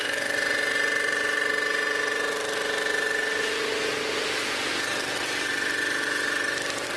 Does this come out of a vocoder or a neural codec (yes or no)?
no